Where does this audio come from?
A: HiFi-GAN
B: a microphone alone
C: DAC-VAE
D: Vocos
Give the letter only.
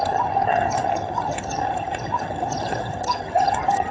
A